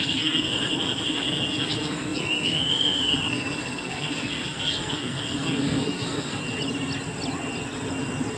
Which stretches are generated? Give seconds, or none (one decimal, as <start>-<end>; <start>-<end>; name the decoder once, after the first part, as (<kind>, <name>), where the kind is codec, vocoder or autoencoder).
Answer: 0.0-6.4 (codec, SNAC)